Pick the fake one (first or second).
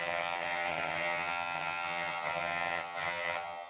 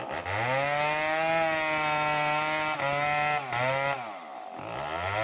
first